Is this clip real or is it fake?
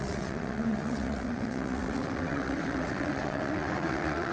fake